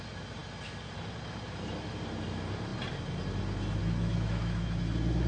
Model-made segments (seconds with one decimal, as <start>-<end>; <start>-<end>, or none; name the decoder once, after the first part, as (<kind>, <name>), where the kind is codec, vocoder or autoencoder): 3.8-4.8 (autoencoder, DAC-VAE)